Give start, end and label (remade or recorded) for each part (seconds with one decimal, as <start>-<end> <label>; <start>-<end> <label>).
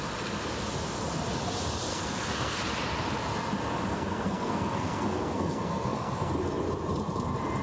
0.0-1.9 recorded; 1.9-2.6 remade; 2.6-3.9 recorded; 3.9-6.3 remade; 6.3-7.6 recorded